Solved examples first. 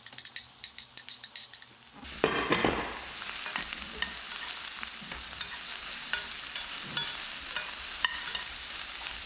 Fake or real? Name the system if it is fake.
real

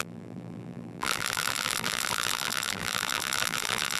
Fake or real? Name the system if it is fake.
fake, vocoder, BigVGAN v2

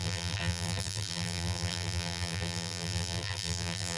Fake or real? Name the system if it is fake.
fake, vocoder, BigVGAN v2